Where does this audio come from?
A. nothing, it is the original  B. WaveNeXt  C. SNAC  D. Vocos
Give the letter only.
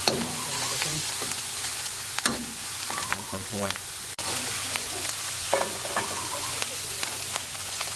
D